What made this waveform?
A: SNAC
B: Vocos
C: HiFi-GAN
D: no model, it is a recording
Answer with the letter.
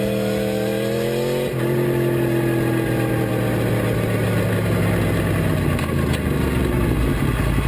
D